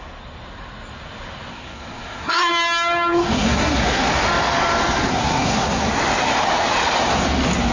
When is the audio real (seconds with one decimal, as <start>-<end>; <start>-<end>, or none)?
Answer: 0.0-1.5; 2.5-3.1; 4.1-5.1; 5.9-7.7